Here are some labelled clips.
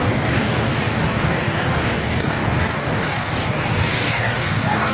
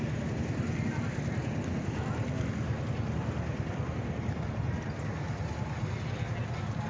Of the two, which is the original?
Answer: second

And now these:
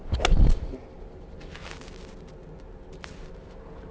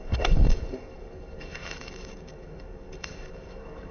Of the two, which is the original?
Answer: first